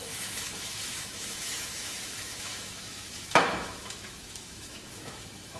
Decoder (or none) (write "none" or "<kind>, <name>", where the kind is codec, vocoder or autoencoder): autoencoder, DAC-VAE